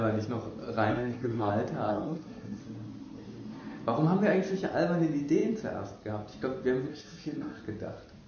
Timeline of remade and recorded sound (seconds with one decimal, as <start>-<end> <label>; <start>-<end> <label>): 0.0-0.9 recorded; 0.9-1.5 remade; 1.5-1.9 recorded; 1.9-2.6 remade; 2.6-6.9 recorded; 6.9-7.6 remade; 7.6-8.3 recorded